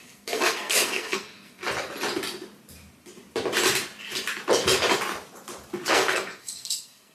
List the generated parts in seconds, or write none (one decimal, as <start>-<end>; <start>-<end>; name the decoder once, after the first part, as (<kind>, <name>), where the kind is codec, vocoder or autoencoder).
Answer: 0.0-1.6 (codec, SNAC); 5.9-7.1